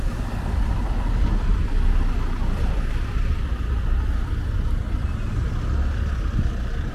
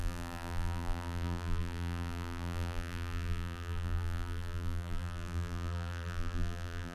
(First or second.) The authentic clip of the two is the first